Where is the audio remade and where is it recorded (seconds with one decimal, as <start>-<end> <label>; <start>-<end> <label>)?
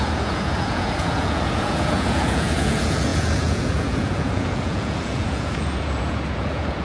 0.0-6.8 remade